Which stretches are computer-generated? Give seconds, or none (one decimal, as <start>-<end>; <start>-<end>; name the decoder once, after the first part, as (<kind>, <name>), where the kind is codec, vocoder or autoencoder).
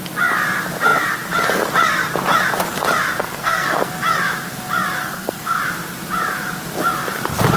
3.2-3.9 (codec, SNAC); 5.0-5.6